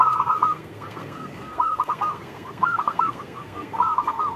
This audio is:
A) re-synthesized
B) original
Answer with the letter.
A